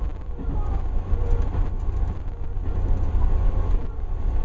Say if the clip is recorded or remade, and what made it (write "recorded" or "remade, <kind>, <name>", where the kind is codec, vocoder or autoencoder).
recorded